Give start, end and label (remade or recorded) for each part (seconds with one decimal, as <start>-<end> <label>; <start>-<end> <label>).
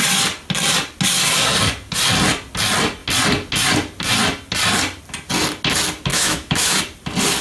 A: 0.0-6.1 recorded; 6.1-6.8 remade; 6.8-7.4 recorded